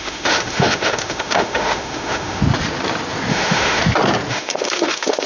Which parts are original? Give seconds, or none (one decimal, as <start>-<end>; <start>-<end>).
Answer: 2.4-3.3; 3.8-4.3